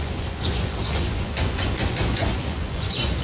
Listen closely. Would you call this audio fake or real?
fake